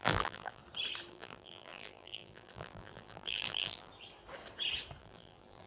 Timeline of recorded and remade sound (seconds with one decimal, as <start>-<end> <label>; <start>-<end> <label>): 0.0-0.6 remade; 0.6-1.1 recorded; 1.1-3.9 remade; 3.9-5.0 recorded; 5.0-5.7 remade